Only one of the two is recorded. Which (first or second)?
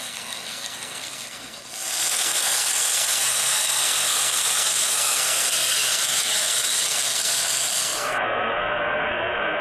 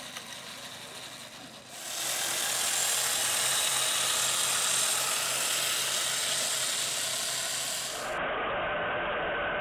second